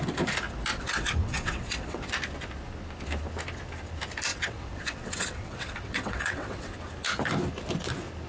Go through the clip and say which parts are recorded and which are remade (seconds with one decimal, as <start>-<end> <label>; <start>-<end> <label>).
0.0-0.7 recorded; 0.7-2.1 remade; 2.1-4.3 recorded; 4.3-6.7 remade; 6.7-8.3 recorded